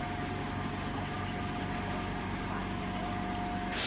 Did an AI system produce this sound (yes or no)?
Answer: no